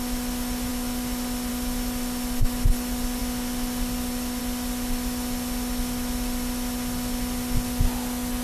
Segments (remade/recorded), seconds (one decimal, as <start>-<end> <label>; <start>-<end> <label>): 0.0-8.4 recorded